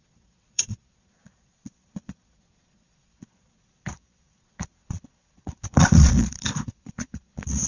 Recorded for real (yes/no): no